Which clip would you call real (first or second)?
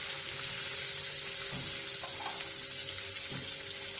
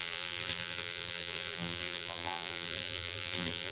first